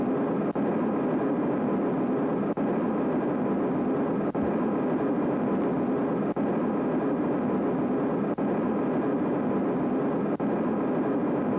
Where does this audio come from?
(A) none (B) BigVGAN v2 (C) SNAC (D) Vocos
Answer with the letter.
A